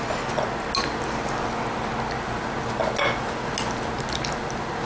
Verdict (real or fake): real